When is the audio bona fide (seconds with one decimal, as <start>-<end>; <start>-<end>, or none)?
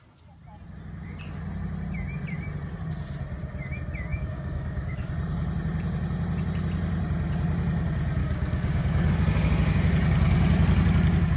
0.0-4.1; 5.1-8.2; 9.1-11.4